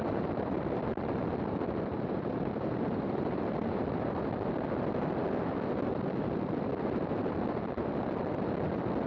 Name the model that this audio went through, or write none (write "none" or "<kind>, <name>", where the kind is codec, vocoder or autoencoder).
vocoder, BigVGAN v2